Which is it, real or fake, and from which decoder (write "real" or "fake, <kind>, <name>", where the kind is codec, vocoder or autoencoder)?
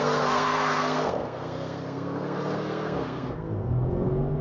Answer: fake, codec, SNAC